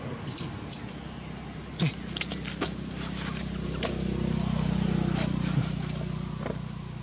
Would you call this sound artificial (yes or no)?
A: no